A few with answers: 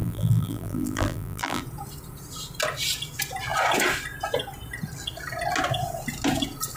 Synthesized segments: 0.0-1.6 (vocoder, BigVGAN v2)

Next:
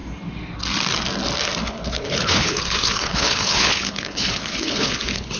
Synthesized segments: 1.7-5.4 (codec, HILCodec)

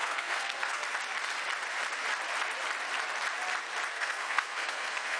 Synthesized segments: 0.0-0.8 (codec, SNAC); 3.9-5.2

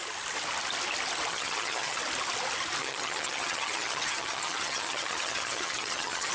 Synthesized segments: 1.3-2.0 (vocoder, HiFi-GAN); 2.8-6.3

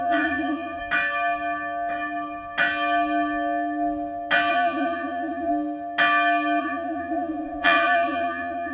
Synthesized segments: 0.0-0.8 (vocoder, Vocos); 4.5-5.5; 6.6-8.7

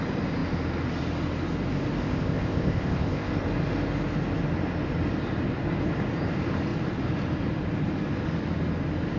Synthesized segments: 2.0-3.3 (codec, ZipCodec)

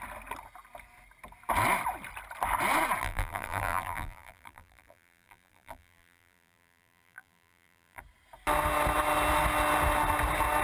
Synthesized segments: 3.0-8.0 (vocoder, BigVGAN v2)